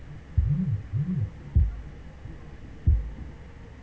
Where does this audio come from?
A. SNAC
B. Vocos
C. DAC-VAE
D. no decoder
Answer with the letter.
D